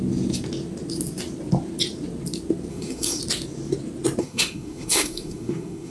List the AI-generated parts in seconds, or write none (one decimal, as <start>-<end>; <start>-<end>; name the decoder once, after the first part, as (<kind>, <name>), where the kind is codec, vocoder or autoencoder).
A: 2.7-3.2 (codec, SNAC); 4.2-5.9